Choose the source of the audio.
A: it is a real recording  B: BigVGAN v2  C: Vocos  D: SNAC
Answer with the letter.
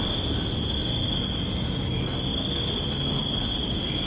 A